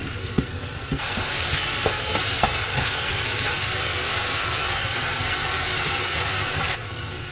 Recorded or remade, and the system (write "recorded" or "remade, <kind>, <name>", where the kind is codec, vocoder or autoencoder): remade, codec, SNAC